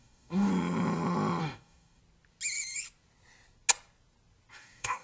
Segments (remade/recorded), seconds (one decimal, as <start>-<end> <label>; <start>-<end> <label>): 0.0-0.5 remade; 0.5-1.4 recorded; 1.4-2.0 remade; 2.0-4.5 recorded; 4.5-5.0 remade